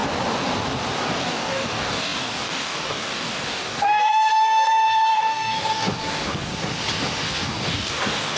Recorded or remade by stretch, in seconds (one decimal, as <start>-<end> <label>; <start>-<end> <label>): 0.0-1.0 recorded; 1.0-6.5 remade; 6.5-7.2 recorded; 7.2-8.4 remade